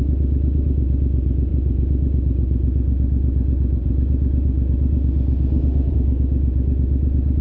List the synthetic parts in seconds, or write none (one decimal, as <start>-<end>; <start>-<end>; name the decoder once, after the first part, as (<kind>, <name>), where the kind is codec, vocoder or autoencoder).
none